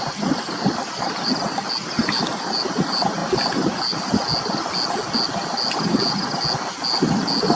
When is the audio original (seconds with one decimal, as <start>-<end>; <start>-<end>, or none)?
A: 0.0-7.6